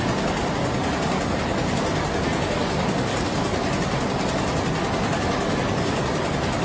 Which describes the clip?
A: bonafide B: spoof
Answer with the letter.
A